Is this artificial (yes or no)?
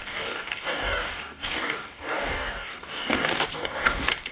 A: yes